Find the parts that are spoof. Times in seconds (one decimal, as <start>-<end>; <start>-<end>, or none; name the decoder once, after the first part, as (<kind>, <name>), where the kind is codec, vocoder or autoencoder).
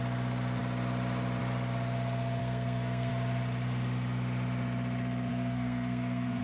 2.4-3.1 (codec, SNAC); 5.3-6.4